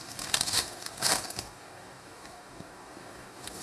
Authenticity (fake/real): fake